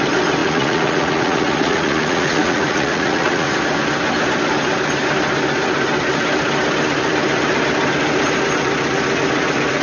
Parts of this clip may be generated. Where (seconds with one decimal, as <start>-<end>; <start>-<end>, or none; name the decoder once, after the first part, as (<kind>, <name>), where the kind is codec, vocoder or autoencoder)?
0.4-3.5 (vocoder, Vocos)